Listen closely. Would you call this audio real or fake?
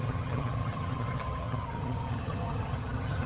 fake